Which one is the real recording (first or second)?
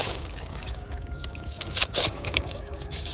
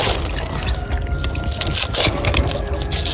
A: second